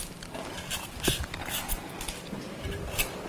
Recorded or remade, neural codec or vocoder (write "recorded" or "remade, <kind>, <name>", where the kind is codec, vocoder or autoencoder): recorded